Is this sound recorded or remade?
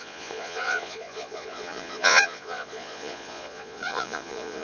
remade